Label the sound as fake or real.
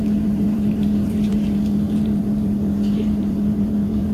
fake